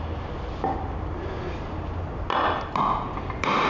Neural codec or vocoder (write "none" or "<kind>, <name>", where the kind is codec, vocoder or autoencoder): none